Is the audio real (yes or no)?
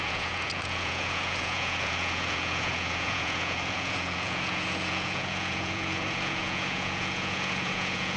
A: no